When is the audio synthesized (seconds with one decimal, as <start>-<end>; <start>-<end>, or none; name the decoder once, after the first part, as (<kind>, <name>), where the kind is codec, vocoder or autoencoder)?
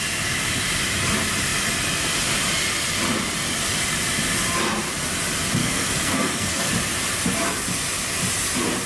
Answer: 5.6-6.7 (codec, SNAC)